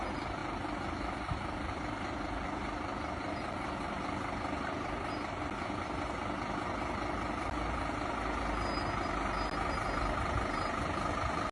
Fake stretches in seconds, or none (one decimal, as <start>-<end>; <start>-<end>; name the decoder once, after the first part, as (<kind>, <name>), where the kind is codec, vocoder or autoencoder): 0.4-5.4 (vocoder, BigVGAN v2)